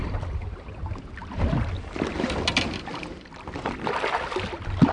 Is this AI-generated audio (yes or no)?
no